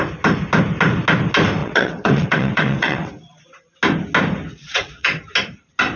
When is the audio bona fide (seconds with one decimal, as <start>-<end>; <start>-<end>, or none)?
0.0-1.6; 3.1-4.5; 5.2-6.0